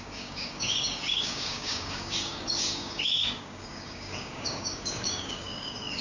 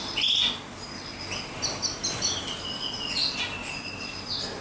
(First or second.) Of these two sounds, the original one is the second